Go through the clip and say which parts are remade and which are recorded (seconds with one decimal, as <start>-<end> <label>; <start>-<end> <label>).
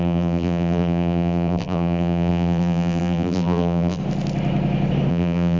0.0-4.0 remade; 4.0-5.1 recorded; 5.1-5.6 remade